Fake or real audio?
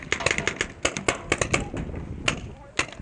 real